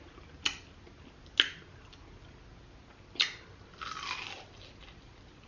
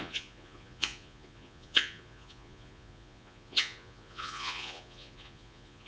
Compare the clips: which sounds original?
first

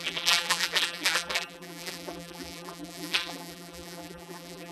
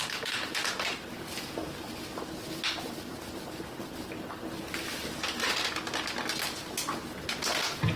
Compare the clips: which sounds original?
second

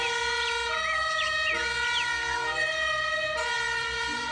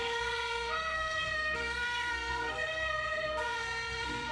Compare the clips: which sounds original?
first